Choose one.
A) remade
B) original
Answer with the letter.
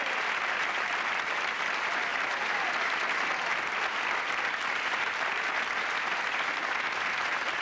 B